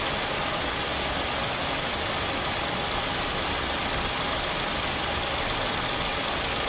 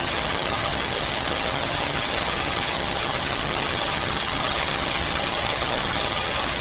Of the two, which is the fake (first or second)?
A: second